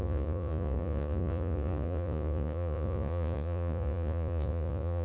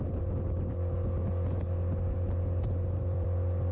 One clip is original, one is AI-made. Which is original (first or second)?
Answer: second